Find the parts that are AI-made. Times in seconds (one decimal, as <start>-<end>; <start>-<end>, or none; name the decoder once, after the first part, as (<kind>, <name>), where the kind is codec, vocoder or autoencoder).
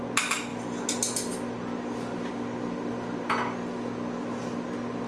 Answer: none